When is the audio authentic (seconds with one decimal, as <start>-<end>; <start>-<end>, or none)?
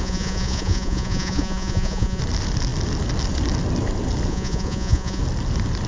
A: 2.2-4.3; 5.2-5.9